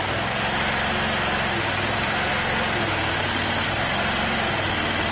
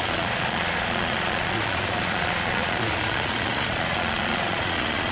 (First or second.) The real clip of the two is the first